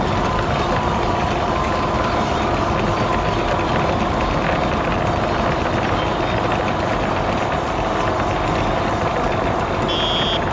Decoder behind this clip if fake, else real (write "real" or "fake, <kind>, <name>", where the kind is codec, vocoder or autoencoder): real